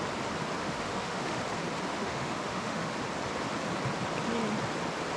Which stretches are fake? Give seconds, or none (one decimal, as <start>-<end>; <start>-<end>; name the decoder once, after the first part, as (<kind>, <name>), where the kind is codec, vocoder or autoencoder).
0.6-1.4 (autoencoder, DAC-VAE); 1.9-2.9